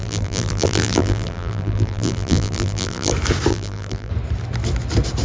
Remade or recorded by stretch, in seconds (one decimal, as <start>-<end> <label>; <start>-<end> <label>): 0.0-3.1 remade; 3.1-3.5 recorded; 3.5-4.1 remade; 4.1-5.2 recorded